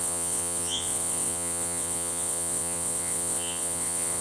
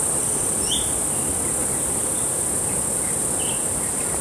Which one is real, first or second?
second